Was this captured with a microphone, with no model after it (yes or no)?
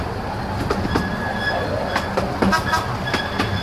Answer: yes